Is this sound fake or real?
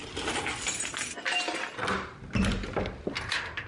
real